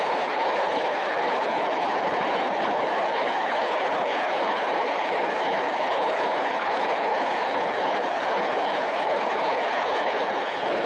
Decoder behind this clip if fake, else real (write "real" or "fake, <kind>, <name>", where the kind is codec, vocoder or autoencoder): fake, codec, HILCodec